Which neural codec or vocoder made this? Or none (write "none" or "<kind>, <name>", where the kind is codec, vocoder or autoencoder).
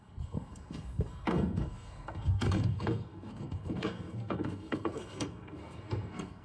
codec, SNAC